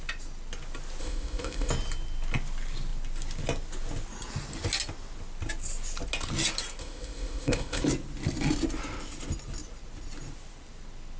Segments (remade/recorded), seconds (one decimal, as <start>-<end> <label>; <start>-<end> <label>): 0.0-1.0 recorded; 1.0-1.7 remade; 1.7-6.8 recorded; 6.8-7.8 remade; 7.8-11.2 recorded